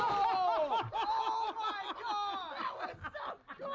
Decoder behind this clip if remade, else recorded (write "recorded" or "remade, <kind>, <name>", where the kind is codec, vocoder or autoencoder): recorded